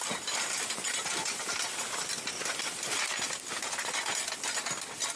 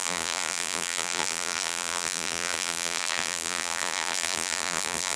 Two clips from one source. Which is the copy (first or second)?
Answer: second